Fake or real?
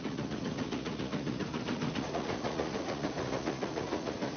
fake